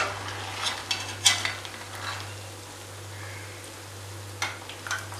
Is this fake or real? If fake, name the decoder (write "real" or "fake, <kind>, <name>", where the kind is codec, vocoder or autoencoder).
real